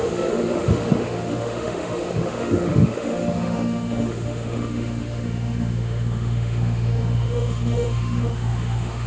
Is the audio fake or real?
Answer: fake